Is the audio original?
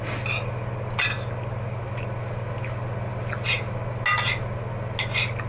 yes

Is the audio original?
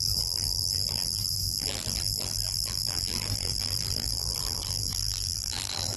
no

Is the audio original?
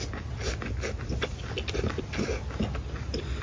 yes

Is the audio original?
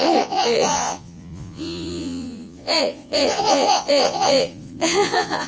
no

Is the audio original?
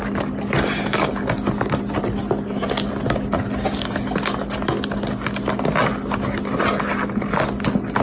yes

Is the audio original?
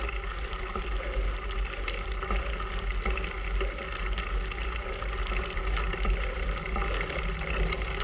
yes